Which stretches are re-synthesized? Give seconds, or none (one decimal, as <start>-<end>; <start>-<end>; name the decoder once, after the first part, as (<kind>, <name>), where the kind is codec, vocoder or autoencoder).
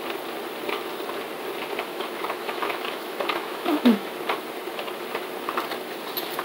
1.9-4.1 (autoencoder, DAC-VAE)